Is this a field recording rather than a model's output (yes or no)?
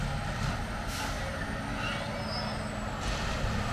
yes